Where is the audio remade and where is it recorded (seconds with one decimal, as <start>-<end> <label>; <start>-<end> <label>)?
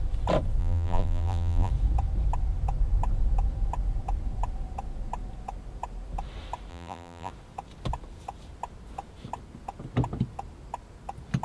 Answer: 0.0-0.6 recorded; 0.6-1.7 remade; 1.7-6.7 recorded; 6.7-7.3 remade; 7.3-11.4 recorded